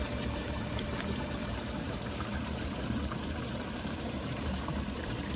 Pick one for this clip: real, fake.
fake